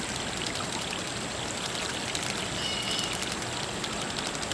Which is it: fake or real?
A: real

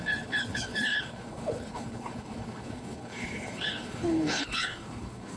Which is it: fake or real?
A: fake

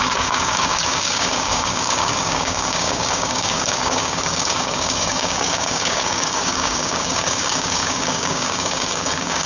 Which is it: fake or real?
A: fake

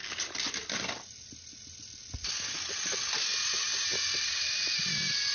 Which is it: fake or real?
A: real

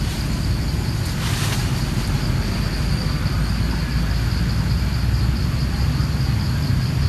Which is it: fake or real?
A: real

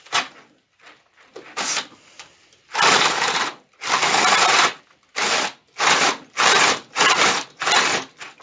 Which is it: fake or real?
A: real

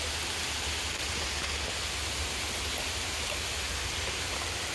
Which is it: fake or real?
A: real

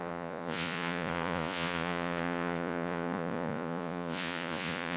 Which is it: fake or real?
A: fake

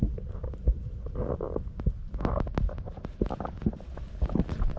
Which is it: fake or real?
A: real